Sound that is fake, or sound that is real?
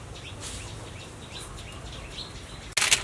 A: real